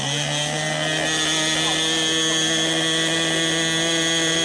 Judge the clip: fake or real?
real